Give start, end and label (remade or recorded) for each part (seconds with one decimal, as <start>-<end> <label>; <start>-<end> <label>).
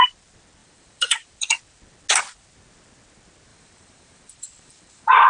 0.0-0.6 recorded; 0.6-1.3 remade; 1.3-3.5 recorded; 3.5-5.3 remade